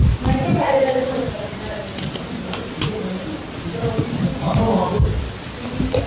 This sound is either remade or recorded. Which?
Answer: recorded